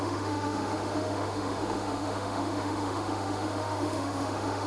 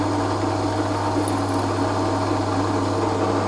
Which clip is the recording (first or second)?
second